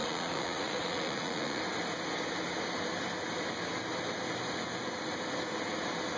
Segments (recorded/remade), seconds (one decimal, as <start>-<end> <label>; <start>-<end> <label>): 0.0-1.6 remade; 1.6-6.2 recorded